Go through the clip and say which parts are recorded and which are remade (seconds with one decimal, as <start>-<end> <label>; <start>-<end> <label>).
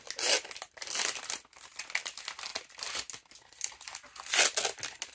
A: 0.0-5.1 recorded